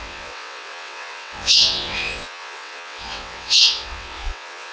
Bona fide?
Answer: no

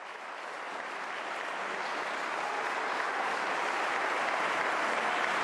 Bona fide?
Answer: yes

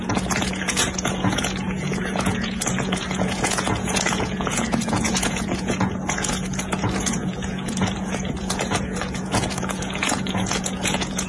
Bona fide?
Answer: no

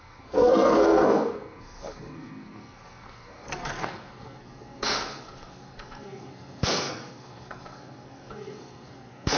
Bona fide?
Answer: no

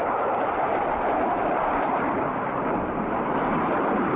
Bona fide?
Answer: no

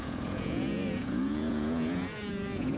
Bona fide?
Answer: no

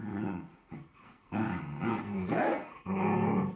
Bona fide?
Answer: no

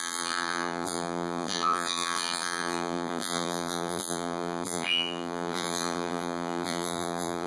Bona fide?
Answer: no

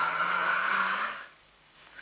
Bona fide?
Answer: no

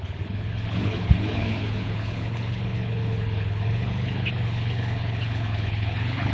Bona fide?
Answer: no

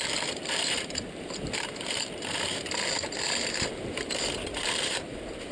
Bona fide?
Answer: no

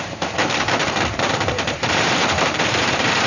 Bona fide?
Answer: no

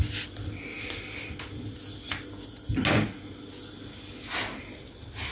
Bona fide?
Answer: yes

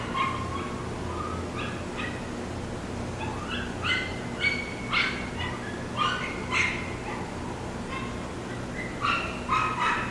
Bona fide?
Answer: yes